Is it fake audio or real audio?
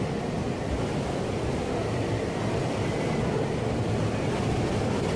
fake